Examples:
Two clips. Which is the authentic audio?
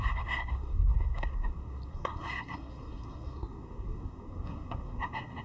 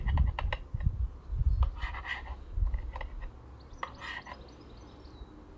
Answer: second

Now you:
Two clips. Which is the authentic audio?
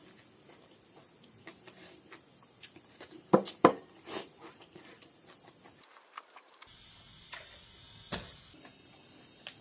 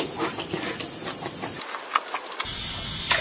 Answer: second